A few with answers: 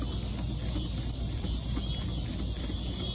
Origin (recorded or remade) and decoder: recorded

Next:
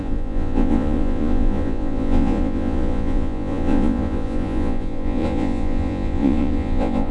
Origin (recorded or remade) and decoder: remade, vocoder, Vocos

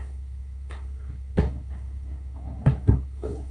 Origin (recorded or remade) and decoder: remade, codec, SNAC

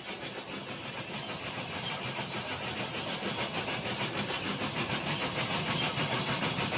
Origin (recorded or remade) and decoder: remade, vocoder, BigVGAN v2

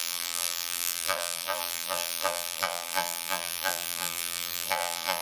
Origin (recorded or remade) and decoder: remade, vocoder, BigVGAN v2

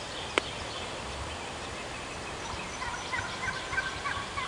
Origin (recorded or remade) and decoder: recorded